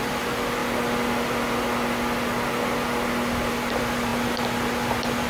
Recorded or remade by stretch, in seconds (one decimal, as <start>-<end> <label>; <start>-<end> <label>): 0.0-5.3 recorded